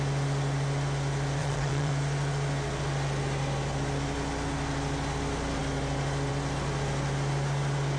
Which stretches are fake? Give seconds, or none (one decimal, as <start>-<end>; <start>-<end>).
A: 1.4-1.9